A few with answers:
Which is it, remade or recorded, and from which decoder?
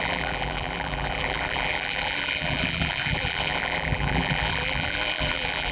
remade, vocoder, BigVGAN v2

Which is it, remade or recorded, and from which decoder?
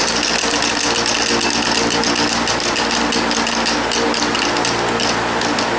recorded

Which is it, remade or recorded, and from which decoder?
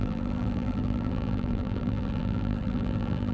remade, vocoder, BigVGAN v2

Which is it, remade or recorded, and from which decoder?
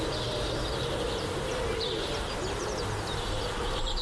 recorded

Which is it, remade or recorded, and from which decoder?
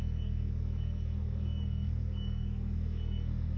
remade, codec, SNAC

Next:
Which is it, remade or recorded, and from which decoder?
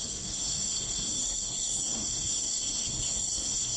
remade, codec, SNAC